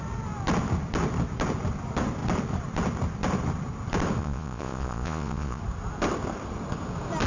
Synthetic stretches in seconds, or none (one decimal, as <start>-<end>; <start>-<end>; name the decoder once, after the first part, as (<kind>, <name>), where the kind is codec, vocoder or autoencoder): 4.2-5.6 (vocoder, Vocos)

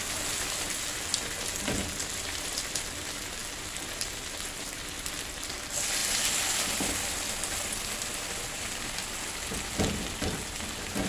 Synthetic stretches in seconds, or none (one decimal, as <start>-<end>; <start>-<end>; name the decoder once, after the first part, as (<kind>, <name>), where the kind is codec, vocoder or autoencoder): none

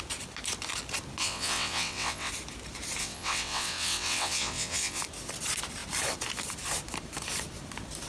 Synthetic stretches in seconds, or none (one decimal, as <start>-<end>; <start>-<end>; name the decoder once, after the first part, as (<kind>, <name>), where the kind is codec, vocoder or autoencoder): 1.2-2.3 (vocoder, WaveNeXt); 3.0-5.0